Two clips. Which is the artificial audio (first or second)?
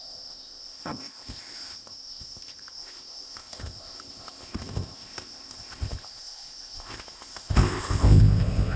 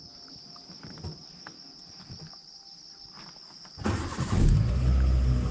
first